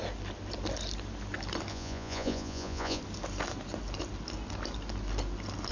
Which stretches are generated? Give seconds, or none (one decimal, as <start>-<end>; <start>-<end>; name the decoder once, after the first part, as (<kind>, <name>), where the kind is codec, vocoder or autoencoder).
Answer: 1.7-3.0 (vocoder, Vocos)